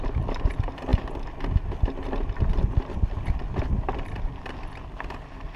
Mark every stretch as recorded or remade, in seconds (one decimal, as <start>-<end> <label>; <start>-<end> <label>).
0.0-5.6 recorded